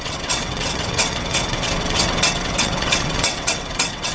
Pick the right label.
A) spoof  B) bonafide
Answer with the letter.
A